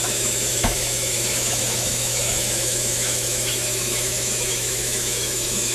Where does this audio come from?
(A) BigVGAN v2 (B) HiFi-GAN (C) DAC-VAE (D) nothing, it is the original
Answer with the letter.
C